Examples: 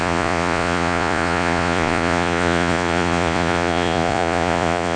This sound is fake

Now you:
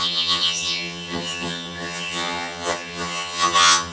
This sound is fake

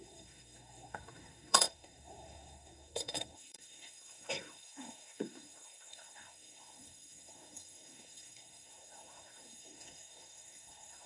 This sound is fake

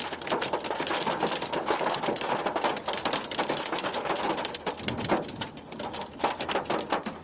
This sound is real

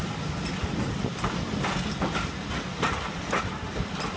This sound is real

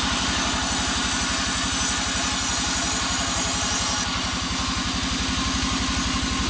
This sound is real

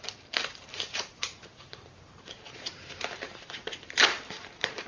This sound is fake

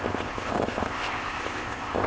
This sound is fake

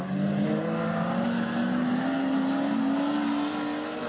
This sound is real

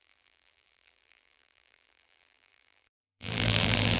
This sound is fake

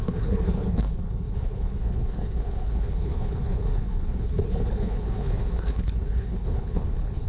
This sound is fake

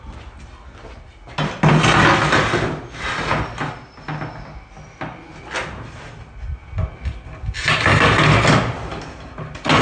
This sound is real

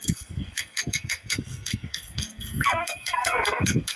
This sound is fake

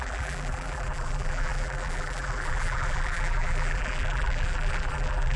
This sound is fake